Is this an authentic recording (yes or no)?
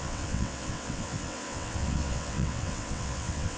no